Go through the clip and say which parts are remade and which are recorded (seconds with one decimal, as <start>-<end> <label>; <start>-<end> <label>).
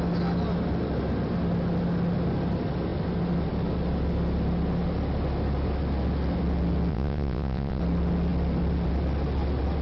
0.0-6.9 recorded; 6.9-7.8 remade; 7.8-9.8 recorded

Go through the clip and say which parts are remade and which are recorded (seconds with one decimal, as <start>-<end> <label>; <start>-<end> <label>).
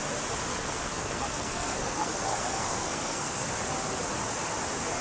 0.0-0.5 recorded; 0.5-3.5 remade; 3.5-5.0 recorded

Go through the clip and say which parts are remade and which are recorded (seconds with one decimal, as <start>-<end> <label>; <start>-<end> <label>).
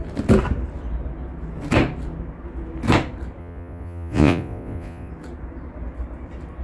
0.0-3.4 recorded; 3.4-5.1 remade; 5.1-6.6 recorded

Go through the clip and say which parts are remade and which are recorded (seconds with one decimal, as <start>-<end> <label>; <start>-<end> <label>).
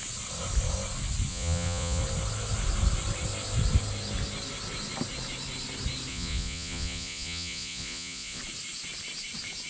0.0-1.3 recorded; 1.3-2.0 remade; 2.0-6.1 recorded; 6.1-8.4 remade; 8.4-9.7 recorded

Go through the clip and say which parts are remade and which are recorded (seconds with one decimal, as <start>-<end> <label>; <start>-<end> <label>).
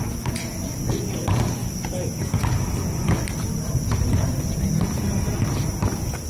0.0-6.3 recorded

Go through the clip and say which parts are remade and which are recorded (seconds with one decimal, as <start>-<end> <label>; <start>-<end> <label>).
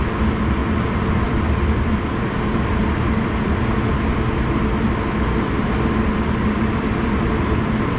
0.0-0.6 recorded; 0.6-3.6 remade; 3.6-8.0 recorded